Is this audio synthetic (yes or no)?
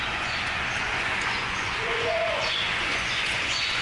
yes